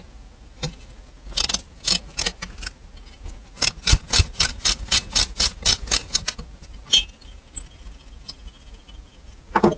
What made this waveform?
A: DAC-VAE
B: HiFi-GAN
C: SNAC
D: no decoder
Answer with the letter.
D